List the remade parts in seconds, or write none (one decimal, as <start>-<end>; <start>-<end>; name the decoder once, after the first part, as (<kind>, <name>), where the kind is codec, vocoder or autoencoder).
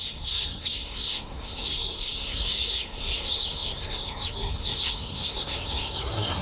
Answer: 0.0-6.4 (codec, SNAC)